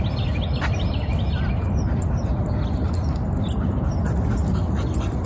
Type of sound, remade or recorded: recorded